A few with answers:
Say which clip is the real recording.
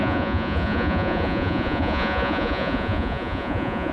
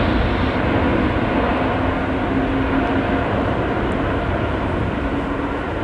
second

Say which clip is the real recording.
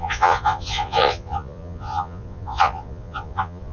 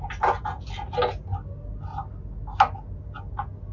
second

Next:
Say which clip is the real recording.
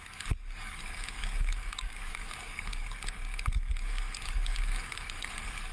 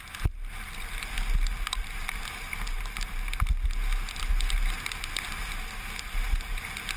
second